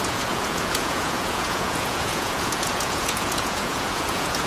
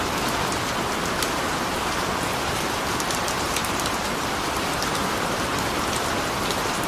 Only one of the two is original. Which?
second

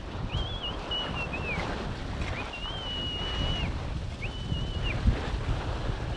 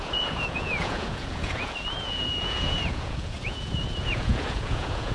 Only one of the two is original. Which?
first